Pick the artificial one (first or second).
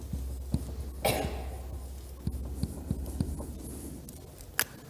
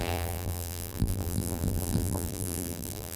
second